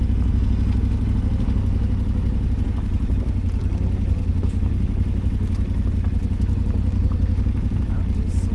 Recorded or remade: recorded